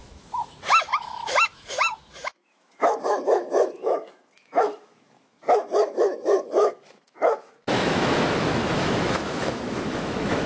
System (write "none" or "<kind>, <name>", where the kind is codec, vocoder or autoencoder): autoencoder, DAC-VAE